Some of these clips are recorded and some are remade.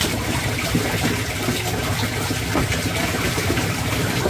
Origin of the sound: recorded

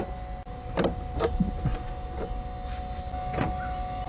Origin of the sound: recorded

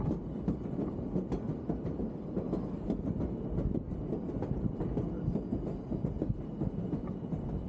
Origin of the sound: recorded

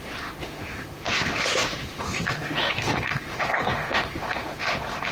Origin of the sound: remade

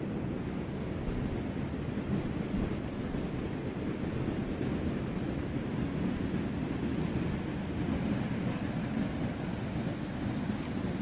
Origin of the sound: recorded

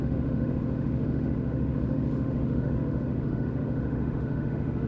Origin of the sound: remade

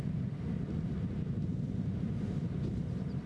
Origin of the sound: recorded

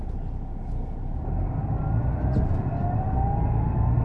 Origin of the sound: recorded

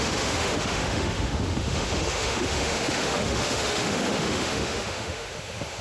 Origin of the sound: remade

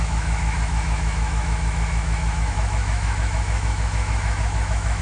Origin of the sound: remade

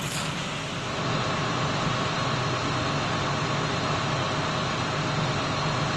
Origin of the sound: recorded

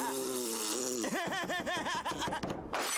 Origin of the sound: recorded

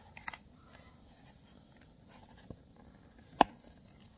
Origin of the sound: recorded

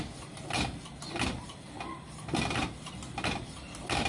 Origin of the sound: recorded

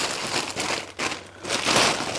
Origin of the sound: recorded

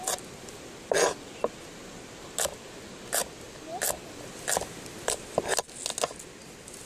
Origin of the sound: recorded